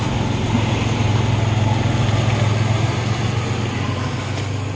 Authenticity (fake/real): real